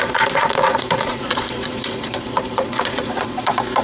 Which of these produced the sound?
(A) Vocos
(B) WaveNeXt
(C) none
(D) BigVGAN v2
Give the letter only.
A